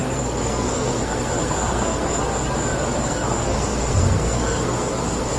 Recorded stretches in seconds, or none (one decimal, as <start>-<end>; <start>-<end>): 2.2-3.0